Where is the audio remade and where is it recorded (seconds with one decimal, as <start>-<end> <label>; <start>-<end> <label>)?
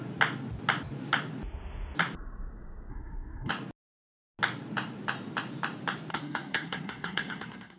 0.0-2.9 recorded; 2.9-3.5 remade; 3.5-6.1 recorded; 6.1-7.8 remade